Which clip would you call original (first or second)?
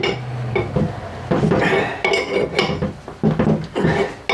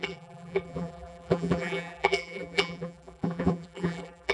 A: first